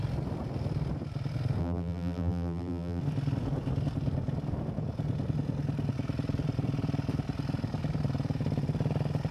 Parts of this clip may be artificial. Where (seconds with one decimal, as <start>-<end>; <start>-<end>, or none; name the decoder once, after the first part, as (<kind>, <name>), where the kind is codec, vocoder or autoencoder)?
1.6-3.0 (vocoder, BigVGAN v2)